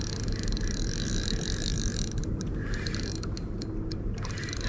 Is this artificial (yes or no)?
no